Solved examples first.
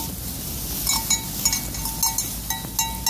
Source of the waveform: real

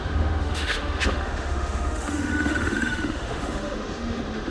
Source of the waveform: fake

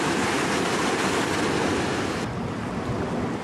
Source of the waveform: real